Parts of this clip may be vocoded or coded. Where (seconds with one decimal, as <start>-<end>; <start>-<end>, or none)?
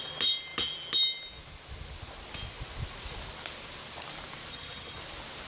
4.5-5.0